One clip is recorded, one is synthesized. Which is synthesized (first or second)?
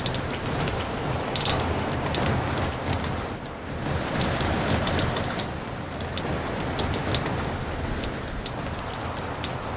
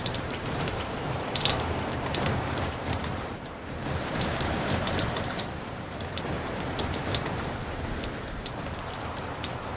second